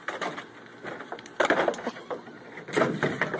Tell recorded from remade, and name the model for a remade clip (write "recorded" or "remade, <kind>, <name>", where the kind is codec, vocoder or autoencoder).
recorded